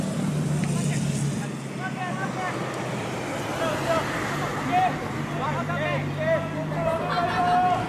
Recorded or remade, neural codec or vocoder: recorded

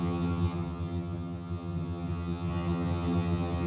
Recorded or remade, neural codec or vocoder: remade, vocoder, HiFi-GAN